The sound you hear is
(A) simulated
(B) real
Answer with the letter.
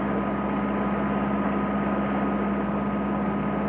B